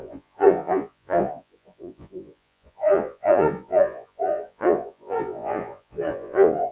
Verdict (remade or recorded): remade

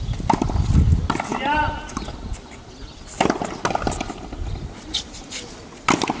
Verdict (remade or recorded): recorded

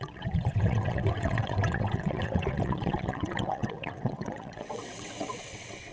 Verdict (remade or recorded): remade